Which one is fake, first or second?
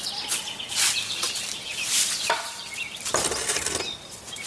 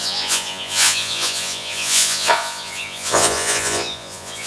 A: second